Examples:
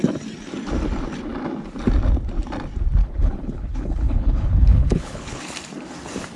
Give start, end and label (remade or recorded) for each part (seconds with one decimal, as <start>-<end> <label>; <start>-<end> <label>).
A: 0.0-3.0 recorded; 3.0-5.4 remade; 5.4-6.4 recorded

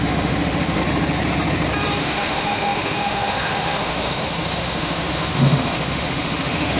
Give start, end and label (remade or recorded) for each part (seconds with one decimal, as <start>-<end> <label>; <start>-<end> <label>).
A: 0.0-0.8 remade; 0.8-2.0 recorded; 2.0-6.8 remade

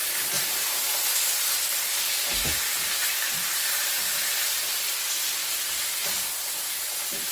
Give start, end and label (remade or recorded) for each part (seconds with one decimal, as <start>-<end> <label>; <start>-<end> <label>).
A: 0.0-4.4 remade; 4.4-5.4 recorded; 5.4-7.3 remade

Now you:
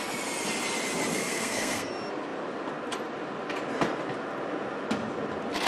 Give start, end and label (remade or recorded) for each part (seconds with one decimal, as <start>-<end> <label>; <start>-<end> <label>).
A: 0.0-1.1 recorded; 1.1-1.9 remade; 1.9-5.7 recorded